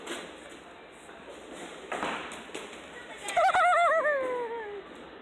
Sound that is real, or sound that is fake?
real